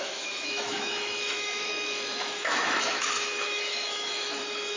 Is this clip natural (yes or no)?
no